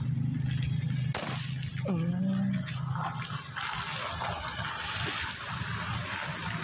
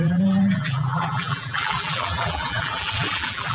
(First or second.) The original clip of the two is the first